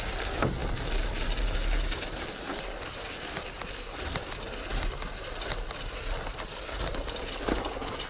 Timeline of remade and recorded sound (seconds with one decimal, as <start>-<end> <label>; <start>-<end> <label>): 0.0-8.1 recorded